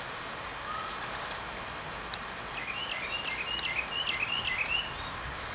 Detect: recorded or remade recorded